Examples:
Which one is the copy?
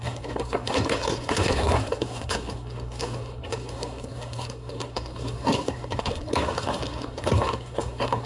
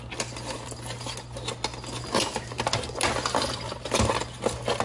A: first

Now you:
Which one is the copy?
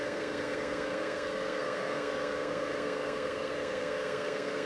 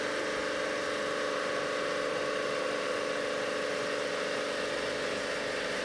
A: first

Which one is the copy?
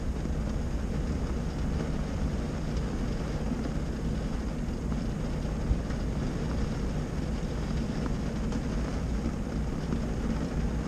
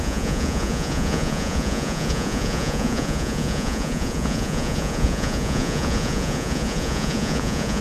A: second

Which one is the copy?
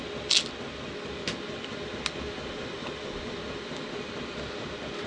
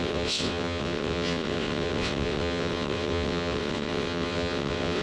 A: second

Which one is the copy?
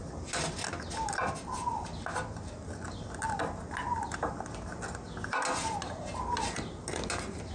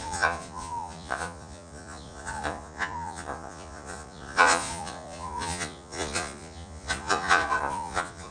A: second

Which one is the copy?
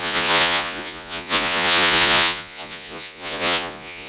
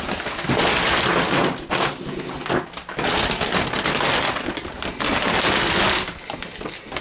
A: first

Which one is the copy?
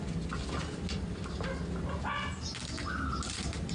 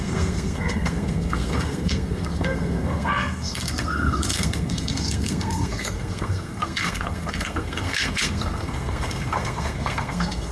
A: second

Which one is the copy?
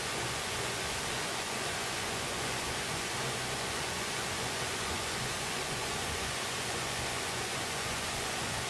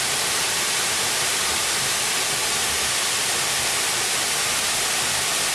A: first